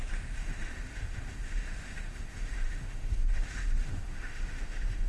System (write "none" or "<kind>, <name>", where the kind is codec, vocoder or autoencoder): autoencoder, DAC-VAE